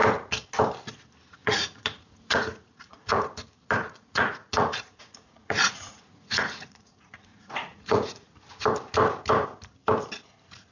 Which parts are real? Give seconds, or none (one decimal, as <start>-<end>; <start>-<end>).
0.0-1.4; 3.3-3.8; 8.3-10.7